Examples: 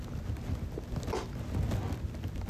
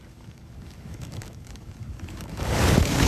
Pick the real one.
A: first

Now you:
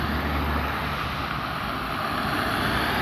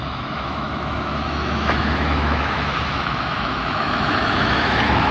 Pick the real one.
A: first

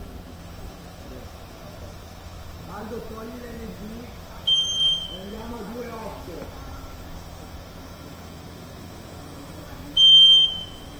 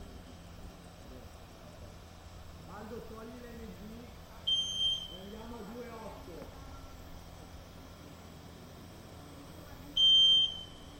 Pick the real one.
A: second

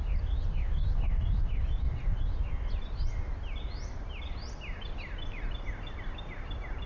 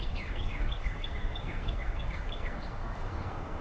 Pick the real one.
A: first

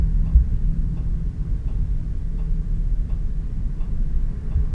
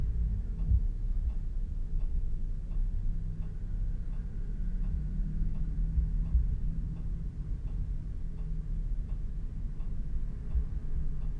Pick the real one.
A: second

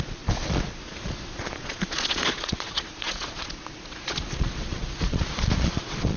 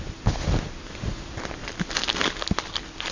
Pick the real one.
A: second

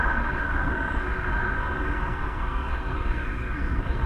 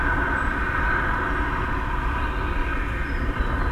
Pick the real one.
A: second